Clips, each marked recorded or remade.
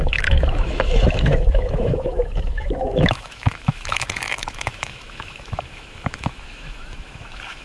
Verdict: remade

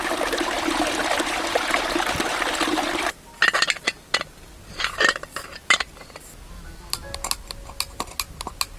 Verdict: recorded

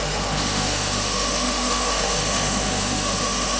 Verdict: remade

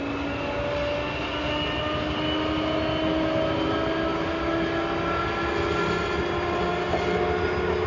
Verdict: recorded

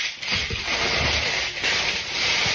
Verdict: recorded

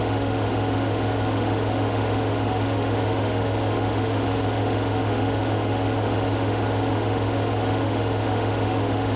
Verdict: remade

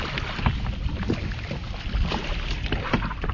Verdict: recorded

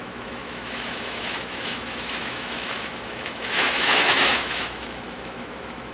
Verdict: remade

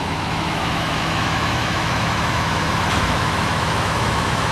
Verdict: remade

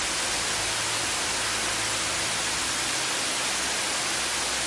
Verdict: recorded